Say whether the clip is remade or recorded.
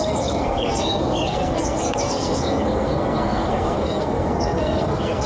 remade